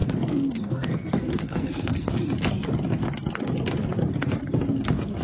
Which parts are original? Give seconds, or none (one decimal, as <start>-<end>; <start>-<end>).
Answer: 2.1-5.2